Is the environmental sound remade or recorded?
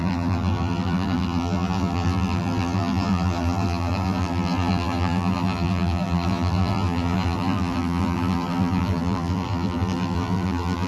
remade